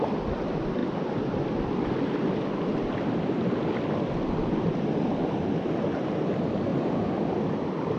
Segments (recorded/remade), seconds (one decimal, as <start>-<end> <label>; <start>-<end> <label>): 0.0-0.8 remade; 0.8-4.5 recorded; 4.5-8.0 remade